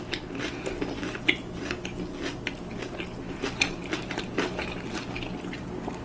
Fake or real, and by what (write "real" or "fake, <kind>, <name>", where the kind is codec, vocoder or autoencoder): real